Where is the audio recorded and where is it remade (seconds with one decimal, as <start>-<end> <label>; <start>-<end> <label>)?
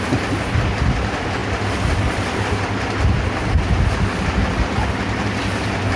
0.0-6.0 recorded